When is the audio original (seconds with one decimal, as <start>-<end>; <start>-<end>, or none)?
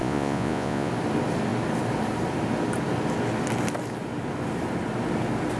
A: 0.9-5.6